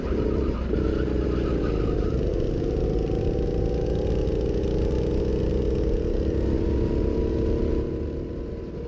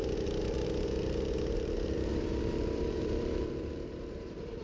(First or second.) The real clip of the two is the first